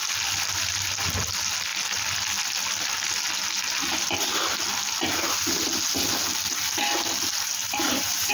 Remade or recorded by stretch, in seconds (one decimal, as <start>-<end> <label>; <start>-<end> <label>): 0.0-7.6 recorded; 7.6-8.3 remade